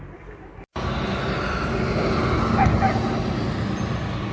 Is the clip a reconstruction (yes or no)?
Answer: no